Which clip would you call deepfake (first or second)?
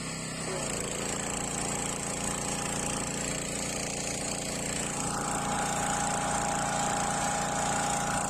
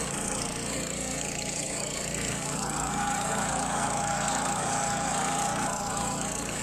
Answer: second